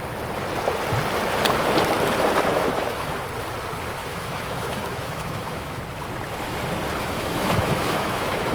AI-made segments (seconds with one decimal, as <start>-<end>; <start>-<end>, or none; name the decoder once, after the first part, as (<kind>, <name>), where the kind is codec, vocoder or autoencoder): 2.5-3.2 (autoencoder, DAC-VAE); 4.0-5.8; 7.0-8.5

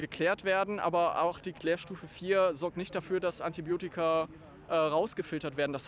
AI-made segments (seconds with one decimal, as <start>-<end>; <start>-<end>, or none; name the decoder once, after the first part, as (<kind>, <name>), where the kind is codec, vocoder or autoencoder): none

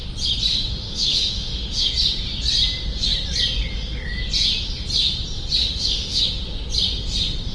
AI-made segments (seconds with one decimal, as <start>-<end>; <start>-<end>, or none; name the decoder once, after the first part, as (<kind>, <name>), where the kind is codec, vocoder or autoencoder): 0.5-1.9 (autoencoder, DAC-VAE); 5.6-6.2

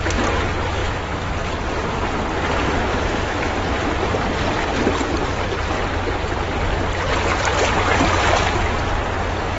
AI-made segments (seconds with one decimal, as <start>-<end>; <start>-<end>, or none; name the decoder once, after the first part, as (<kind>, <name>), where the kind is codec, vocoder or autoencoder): 0.8-1.3 (autoencoder, DAC-VAE); 2.9-3.5

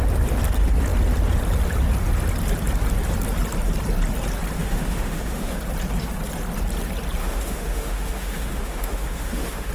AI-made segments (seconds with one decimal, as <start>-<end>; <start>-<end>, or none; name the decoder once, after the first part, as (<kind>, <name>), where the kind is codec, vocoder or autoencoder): 4.6-5.6 (autoencoder, DAC-VAE); 7.2-9.7